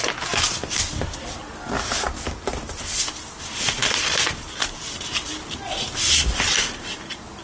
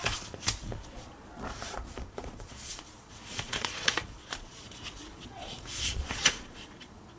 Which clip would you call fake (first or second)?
second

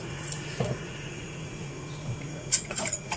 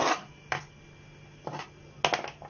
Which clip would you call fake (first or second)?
first